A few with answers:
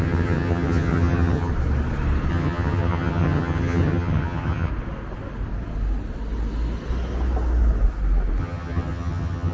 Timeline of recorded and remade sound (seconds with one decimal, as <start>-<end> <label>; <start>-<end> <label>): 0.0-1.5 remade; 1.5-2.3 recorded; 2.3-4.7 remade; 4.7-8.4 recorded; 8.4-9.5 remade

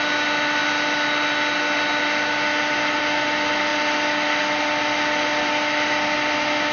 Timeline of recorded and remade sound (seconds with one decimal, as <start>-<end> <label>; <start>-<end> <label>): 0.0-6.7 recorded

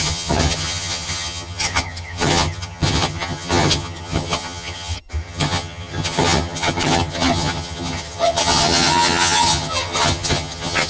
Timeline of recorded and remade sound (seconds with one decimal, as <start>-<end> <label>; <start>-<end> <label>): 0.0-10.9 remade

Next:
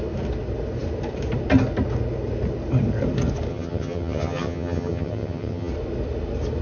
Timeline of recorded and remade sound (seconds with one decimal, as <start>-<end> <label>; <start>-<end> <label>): 0.0-3.5 recorded; 3.5-5.7 remade; 5.7-6.6 recorded